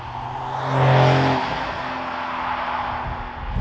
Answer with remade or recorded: recorded